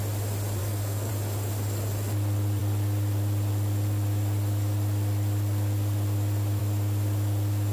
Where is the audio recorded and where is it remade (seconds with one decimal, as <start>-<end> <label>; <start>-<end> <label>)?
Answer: 0.0-0.6 recorded; 0.6-1.1 remade; 1.1-7.7 recorded